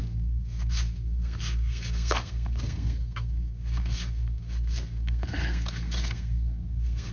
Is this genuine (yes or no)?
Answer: no